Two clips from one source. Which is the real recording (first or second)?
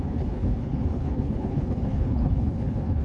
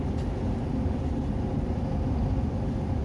second